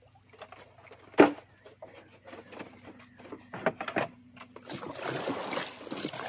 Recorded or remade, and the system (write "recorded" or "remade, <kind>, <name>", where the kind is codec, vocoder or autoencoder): recorded